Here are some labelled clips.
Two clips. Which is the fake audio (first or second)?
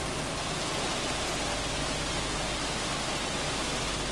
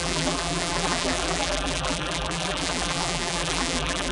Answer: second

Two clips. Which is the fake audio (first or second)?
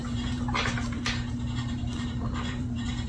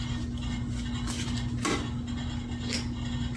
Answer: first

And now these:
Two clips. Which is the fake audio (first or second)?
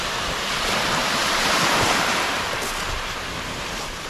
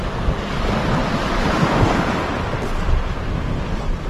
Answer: first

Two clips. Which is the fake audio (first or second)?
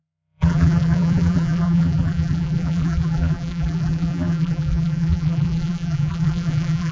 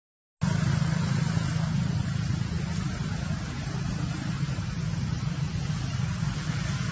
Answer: first